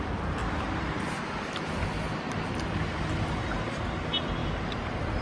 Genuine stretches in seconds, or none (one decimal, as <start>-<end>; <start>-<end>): 0.0-5.2